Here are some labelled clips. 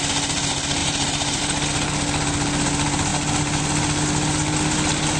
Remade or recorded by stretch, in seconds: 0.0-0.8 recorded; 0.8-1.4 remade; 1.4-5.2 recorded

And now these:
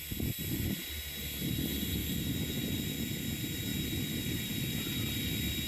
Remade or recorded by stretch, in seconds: 0.0-2.0 recorded; 2.0-2.9 remade; 2.9-3.7 recorded; 3.7-4.5 remade; 4.5-5.7 recorded

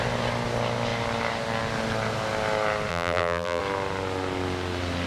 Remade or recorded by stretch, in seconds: 0.0-2.9 recorded; 2.9-3.6 remade; 3.6-5.1 recorded

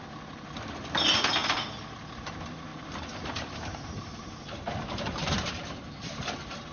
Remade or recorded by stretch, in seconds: 0.0-2.7 recorded; 2.7-5.5 remade; 5.5-6.7 recorded

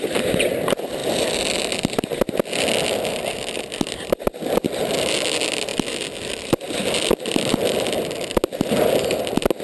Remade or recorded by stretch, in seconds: 0.0-9.6 recorded

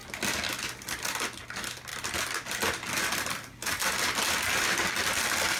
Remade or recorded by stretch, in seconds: 0.0-5.6 recorded

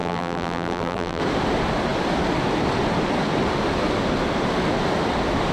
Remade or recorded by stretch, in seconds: 0.0-1.2 remade; 1.2-5.5 recorded

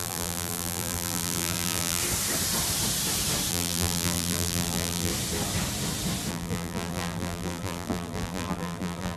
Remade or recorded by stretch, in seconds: 0.0-2.0 remade; 2.0-3.5 recorded; 3.5-5.1 remade; 5.1-6.3 recorded; 6.3-9.2 remade